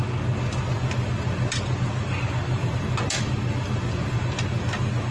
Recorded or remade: recorded